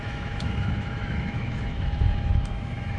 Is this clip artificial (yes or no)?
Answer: yes